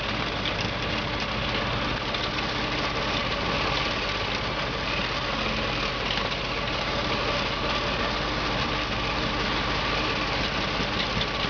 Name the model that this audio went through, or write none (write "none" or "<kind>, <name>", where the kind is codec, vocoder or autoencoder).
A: vocoder, BigVGAN v2